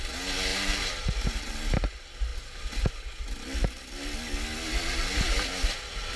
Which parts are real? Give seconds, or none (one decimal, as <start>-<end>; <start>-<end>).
0.0-0.5; 1.5-6.2